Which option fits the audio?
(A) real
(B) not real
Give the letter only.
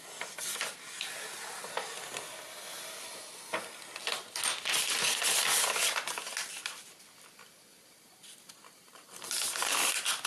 A